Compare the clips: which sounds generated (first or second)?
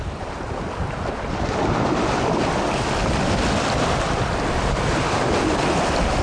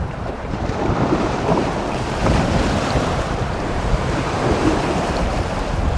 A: second